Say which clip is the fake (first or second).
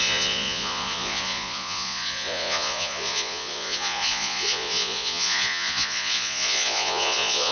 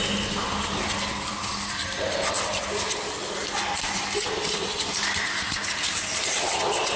first